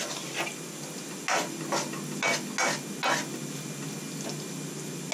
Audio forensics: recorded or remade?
recorded